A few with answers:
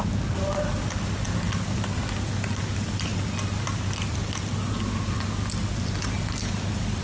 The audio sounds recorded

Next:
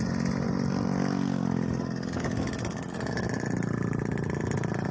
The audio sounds recorded